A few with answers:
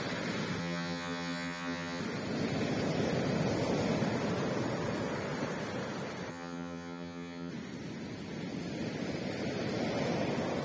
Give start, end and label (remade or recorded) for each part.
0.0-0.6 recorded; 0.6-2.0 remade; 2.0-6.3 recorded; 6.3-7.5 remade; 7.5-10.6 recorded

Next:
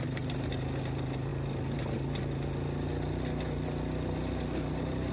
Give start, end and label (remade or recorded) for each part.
0.0-5.1 recorded